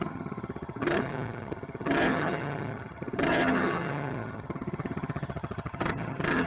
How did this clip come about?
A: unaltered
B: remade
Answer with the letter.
B